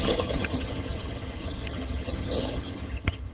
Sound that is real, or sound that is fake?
fake